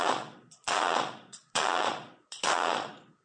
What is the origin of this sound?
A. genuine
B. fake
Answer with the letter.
B